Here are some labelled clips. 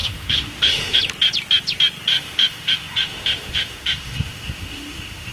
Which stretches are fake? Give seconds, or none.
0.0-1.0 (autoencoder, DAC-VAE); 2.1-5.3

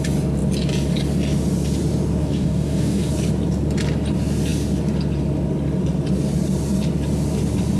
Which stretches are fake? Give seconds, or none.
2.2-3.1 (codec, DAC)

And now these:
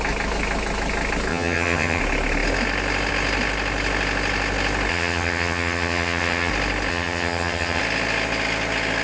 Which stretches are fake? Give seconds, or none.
1.3-2.0 (vocoder, HiFi-GAN); 4.9-6.5; 6.9-7.8

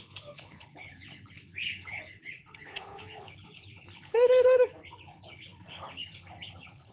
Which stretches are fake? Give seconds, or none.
0.0-6.9 (codec, HILCodec)